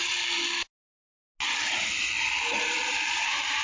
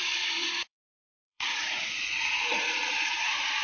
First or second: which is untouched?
first